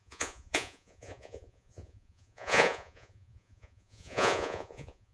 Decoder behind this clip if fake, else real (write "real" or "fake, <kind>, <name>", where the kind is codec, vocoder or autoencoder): fake, vocoder, Vocos